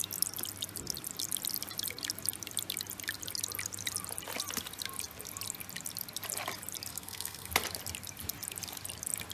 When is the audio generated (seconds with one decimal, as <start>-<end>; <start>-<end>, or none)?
6.9-7.5